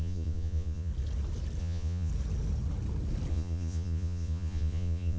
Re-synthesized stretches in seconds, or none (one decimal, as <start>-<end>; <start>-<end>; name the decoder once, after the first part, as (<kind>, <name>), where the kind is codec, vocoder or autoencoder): 0.0-0.9 (vocoder, Vocos); 1.6-2.1; 3.3-5.2